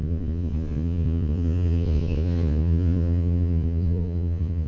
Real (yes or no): no